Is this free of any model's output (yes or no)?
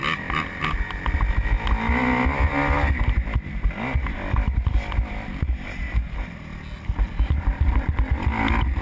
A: yes